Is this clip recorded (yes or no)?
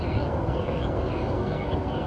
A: no